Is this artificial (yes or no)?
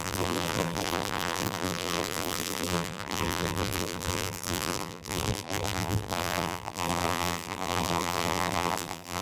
yes